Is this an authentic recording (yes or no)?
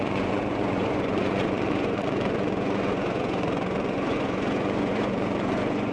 no